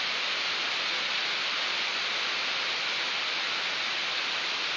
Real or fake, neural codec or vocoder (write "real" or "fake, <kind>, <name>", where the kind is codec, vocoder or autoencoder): real